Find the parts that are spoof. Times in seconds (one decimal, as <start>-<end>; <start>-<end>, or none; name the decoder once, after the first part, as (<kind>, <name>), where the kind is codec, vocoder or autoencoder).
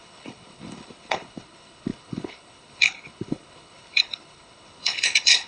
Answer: 0.0-5.5 (codec, HILCodec)